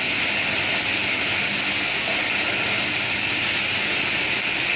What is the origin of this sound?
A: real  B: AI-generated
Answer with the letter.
A